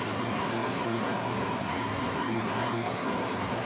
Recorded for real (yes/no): no